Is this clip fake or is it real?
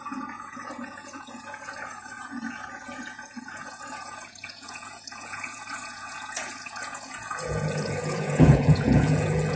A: fake